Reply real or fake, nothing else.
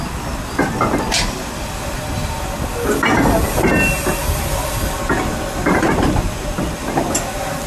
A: real